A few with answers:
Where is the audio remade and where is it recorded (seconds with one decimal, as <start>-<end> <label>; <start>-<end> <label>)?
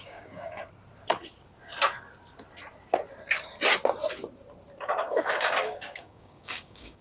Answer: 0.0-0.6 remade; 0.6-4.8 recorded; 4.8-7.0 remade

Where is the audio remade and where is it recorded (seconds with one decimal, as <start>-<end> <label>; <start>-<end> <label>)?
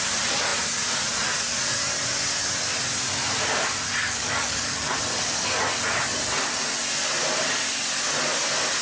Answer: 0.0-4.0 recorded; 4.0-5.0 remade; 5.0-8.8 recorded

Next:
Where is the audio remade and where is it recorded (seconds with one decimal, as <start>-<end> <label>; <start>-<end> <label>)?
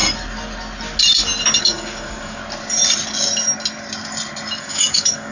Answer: 0.0-1.6 recorded; 1.6-2.4 remade; 2.4-4.6 recorded; 4.6-5.3 remade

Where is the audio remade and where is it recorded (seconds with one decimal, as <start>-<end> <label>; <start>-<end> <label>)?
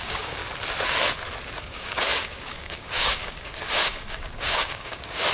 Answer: 0.0-0.4 remade; 0.4-1.6 recorded; 1.6-5.3 remade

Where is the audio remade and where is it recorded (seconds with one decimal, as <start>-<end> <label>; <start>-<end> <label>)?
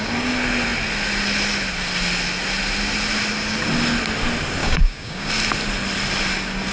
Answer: 0.0-4.6 recorded; 4.6-5.3 remade; 5.3-6.7 recorded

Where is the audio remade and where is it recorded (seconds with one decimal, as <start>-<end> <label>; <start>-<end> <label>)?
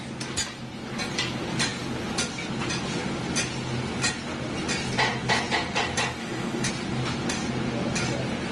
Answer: 0.0-6.2 recorded; 6.2-6.7 remade; 6.7-8.5 recorded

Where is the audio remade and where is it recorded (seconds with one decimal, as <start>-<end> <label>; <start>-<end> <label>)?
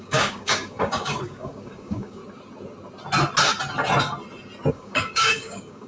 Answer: 0.0-2.2 remade; 2.2-4.7 recorded; 4.7-5.9 remade